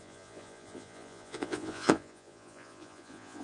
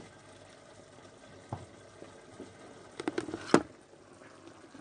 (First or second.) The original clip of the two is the second